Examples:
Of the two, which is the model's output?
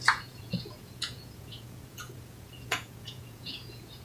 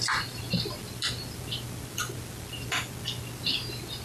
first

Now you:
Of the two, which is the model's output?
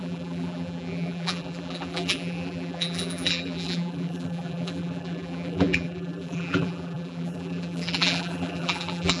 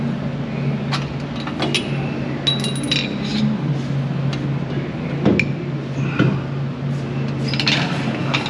first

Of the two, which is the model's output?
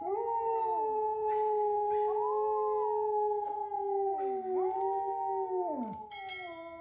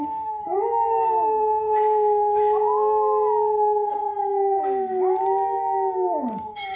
second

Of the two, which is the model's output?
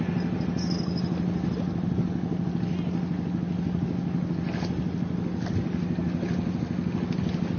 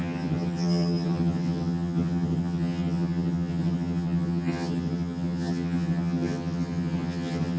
second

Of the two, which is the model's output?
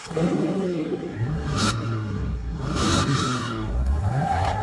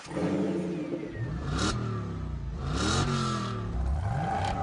first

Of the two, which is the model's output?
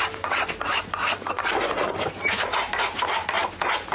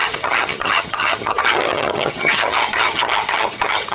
second